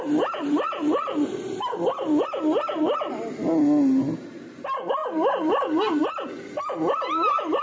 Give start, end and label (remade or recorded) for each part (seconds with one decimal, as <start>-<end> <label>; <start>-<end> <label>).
0.0-7.6 recorded